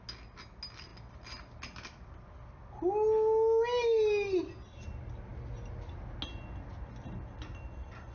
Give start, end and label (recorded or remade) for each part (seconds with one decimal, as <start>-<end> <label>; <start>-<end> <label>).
0.0-8.1 recorded